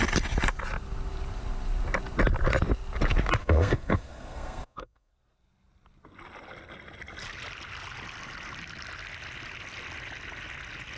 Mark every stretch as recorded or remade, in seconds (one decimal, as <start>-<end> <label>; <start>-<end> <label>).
0.0-3.4 recorded; 3.4-5.1 remade; 5.1-11.0 recorded

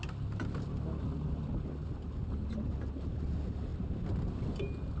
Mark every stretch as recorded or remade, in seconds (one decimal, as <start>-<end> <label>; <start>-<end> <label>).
0.0-5.0 recorded

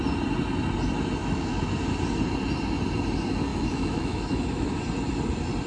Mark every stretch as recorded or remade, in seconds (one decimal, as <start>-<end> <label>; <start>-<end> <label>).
0.0-1.2 recorded; 1.2-1.7 remade; 1.7-3.5 recorded; 3.5-4.8 remade; 4.8-5.7 recorded

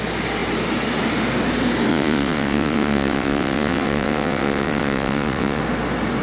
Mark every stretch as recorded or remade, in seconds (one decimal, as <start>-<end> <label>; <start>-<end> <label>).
0.0-1.9 recorded; 1.9-5.6 remade; 5.6-6.2 recorded

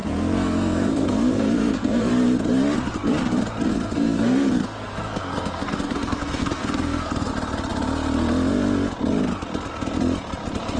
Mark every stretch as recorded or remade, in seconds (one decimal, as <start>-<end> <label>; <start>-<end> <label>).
0.0-2.1 remade; 2.1-3.7 recorded; 3.7-7.3 remade; 7.3-10.8 recorded

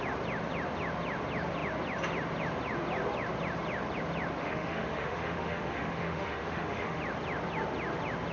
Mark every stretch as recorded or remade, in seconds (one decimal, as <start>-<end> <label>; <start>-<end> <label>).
0.0-4.4 recorded; 4.4-7.0 remade; 7.0-8.3 recorded

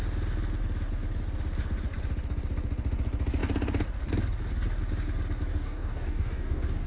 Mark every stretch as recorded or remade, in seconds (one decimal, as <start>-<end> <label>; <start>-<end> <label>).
0.0-5.5 recorded; 5.5-6.9 remade

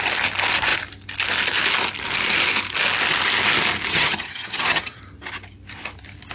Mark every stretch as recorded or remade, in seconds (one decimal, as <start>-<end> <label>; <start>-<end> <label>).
0.0-3.9 recorded; 3.9-5.0 remade; 5.0-6.3 recorded